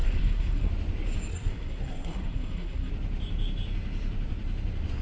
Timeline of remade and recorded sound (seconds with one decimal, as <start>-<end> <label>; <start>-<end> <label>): 0.0-0.7 remade; 0.7-1.3 recorded; 1.3-2.9 remade; 2.9-5.0 recorded